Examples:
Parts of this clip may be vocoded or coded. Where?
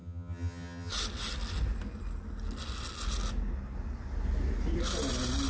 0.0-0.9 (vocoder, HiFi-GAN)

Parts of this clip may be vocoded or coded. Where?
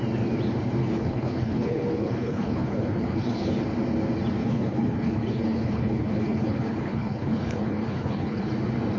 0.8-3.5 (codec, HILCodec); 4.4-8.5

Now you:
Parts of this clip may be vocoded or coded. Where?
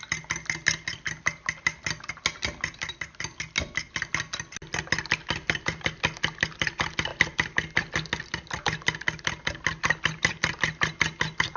none